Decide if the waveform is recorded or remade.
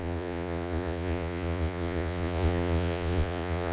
remade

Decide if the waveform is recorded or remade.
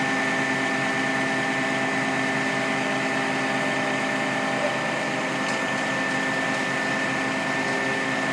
recorded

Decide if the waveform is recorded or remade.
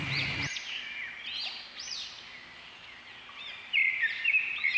recorded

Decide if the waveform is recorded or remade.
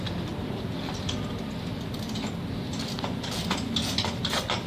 recorded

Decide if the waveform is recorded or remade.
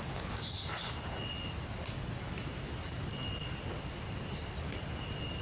recorded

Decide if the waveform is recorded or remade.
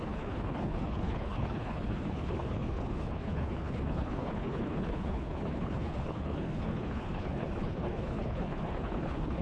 remade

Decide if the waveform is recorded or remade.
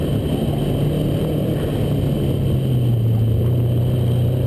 recorded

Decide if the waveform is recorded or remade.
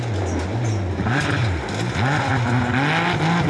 recorded